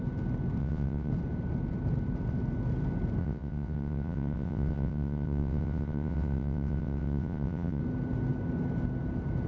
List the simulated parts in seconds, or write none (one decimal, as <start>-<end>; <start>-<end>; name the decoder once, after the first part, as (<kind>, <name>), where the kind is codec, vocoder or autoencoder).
0.6-1.1 (vocoder, WaveNeXt); 3.2-7.8